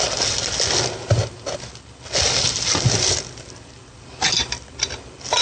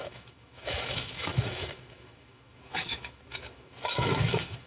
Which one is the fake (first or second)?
second